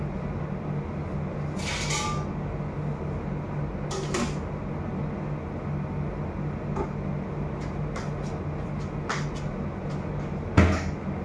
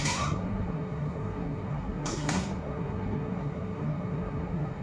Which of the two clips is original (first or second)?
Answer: first